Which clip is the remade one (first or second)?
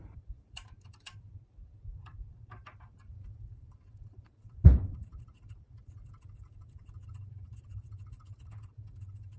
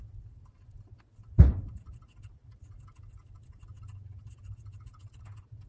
first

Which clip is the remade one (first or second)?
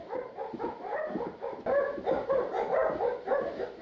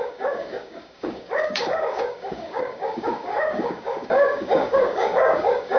second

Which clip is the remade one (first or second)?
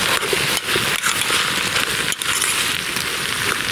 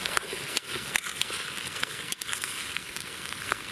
second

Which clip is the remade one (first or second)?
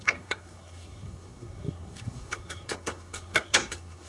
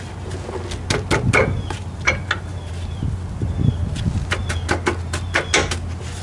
first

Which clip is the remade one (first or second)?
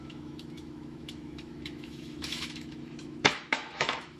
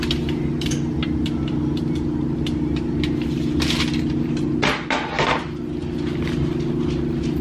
first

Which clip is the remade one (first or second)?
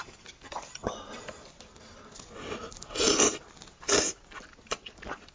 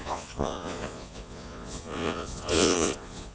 second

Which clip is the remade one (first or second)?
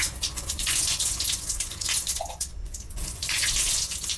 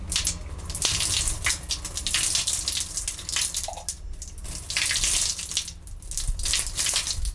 first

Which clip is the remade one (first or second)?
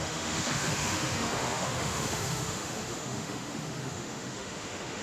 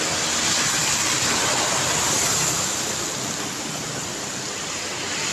first